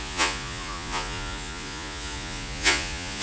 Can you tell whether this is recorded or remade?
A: remade